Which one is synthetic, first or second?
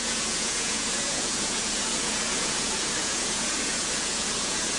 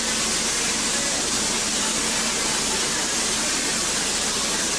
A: first